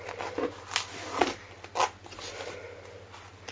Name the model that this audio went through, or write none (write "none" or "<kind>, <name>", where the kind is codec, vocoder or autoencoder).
none